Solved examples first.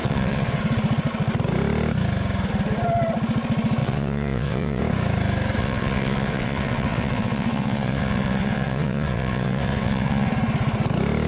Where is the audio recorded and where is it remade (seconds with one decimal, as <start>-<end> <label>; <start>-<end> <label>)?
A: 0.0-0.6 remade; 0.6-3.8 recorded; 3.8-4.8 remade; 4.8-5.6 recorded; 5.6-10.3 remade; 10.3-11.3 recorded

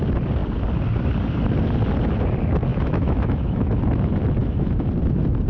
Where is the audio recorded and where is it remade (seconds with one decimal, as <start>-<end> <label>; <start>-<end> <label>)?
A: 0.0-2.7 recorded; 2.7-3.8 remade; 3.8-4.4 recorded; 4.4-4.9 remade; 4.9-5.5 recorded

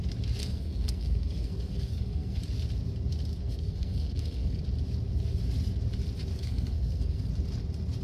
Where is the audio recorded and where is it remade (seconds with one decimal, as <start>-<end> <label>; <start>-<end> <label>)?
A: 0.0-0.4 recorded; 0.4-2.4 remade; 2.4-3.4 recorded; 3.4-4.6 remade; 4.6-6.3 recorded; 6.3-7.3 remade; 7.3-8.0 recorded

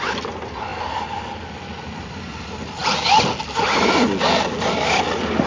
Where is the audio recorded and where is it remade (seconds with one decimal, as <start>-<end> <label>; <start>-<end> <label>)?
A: 0.0-5.5 recorded